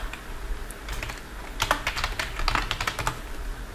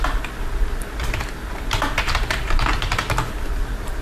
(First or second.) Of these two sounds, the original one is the first